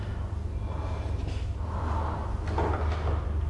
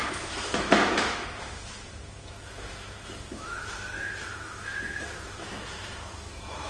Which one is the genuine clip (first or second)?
first